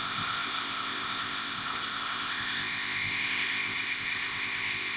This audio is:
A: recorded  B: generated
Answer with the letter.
B